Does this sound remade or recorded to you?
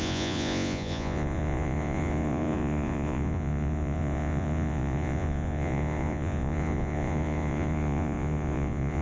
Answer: remade